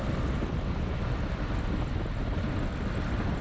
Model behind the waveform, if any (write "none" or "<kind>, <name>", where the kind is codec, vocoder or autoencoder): none